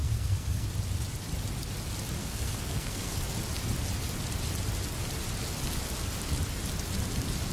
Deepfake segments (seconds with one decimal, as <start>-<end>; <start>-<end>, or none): 0.0-0.7; 2.2-3.2